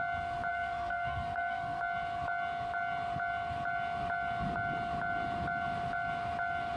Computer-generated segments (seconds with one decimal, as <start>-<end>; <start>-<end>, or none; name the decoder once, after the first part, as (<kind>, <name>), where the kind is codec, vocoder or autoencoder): 0.5-1.8 (codec, SNAC)